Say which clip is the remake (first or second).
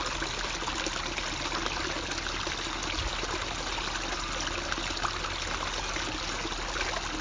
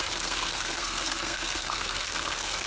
second